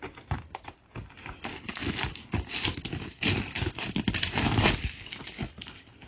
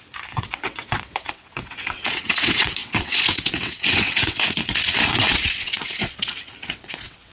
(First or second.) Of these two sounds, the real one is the first